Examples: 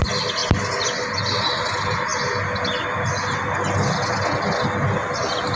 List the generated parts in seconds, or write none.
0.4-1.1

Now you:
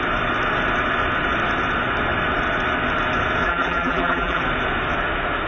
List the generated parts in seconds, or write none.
3.4-4.4

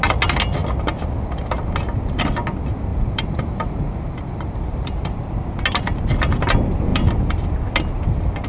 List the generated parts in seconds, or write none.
2.9-5.2